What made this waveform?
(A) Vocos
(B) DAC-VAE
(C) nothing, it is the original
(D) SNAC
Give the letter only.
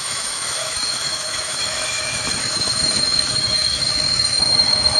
B